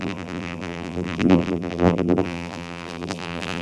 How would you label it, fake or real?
fake